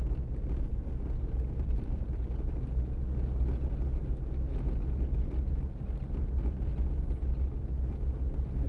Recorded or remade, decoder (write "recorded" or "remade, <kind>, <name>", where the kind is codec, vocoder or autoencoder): recorded